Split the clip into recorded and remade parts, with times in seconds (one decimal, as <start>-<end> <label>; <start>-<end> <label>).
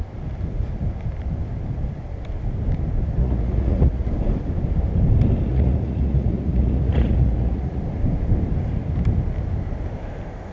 0.0-3.2 recorded; 3.2-4.1 remade; 4.1-5.5 recorded; 5.5-7.8 remade; 7.8-10.5 recorded